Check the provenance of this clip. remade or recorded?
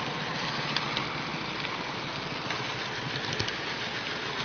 recorded